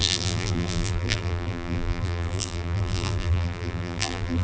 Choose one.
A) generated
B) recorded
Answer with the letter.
A